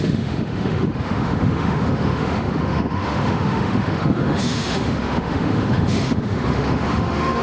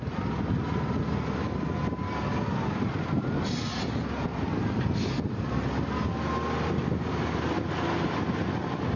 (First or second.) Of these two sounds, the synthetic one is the first